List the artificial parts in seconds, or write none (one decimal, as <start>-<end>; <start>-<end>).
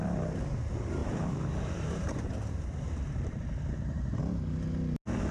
1.0-4.2